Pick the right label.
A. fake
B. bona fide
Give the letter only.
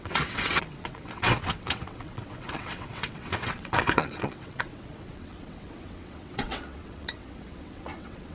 A